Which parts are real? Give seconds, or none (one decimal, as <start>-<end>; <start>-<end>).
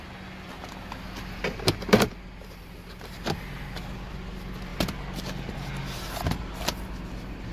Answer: 0.0-4.7; 5.7-7.5